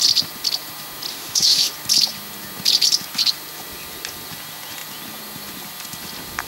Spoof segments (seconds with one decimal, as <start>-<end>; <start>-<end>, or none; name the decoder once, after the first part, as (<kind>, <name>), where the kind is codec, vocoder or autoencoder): 1.1-1.7 (autoencoder, DAC-VAE)